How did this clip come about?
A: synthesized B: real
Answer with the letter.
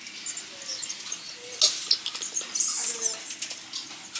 B